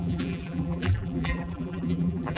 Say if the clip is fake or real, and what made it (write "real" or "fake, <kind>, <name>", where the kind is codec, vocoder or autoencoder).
fake, vocoder, BigVGAN v2